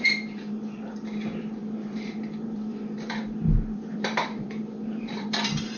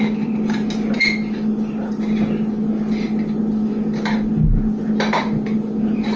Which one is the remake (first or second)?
first